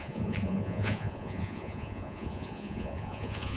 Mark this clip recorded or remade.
remade